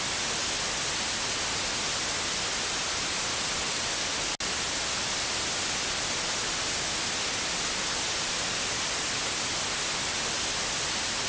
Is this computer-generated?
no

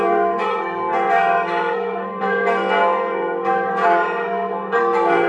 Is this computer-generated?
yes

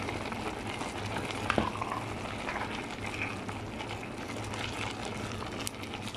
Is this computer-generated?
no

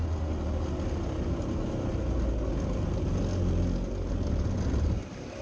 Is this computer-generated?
no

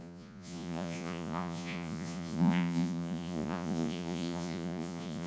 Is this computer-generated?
yes